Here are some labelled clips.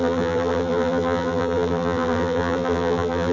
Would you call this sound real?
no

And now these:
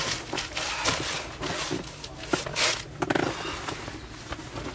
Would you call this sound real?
yes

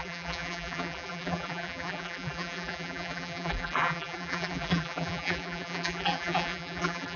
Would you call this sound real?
no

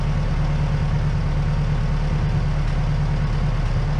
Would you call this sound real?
yes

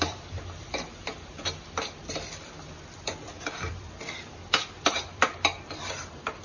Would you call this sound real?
no